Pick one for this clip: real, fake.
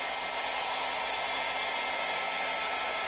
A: real